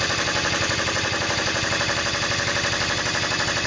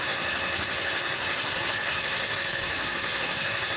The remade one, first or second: second